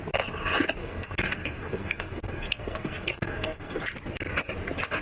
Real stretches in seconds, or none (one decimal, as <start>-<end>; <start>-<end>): 0.0-0.8; 3.8-5.0